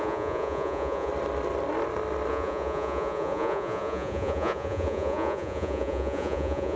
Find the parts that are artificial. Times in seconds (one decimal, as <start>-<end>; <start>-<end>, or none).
0.0-1.1; 2.3-6.8